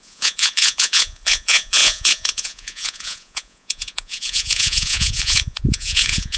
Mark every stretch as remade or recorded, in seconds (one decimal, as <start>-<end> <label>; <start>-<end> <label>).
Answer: 0.0-6.4 remade